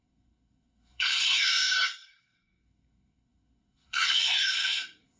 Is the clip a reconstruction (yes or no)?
yes